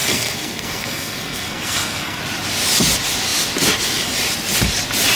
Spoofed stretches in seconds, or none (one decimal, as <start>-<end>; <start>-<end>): 0.0-2.2